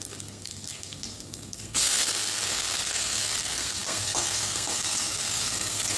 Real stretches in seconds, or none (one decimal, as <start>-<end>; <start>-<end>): none